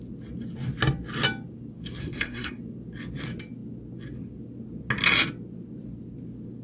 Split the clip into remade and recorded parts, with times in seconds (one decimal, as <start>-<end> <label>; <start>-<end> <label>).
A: 0.0-2.0 recorded; 2.0-2.6 remade; 2.6-6.6 recorded